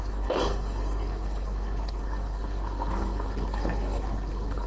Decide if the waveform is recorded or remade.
remade